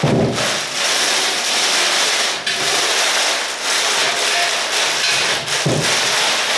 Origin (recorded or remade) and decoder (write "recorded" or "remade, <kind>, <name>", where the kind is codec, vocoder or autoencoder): recorded